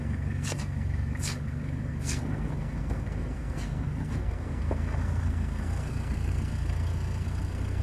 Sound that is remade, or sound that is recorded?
remade